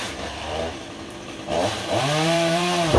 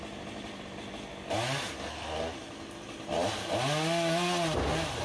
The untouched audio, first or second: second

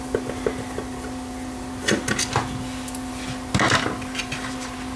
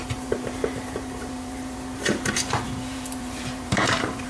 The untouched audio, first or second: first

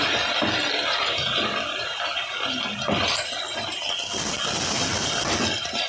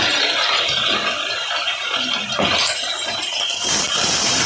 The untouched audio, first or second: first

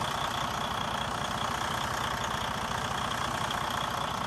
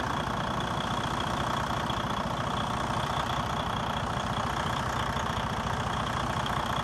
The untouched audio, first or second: first